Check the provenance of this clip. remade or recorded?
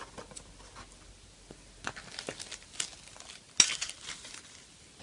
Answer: recorded